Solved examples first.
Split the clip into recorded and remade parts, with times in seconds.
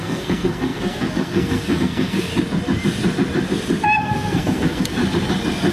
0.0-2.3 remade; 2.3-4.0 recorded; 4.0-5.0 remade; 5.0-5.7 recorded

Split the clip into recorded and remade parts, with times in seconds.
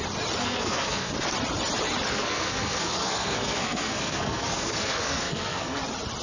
0.0-0.4 recorded; 0.4-1.1 remade; 1.1-2.1 recorded; 2.1-5.8 remade; 5.8-6.2 recorded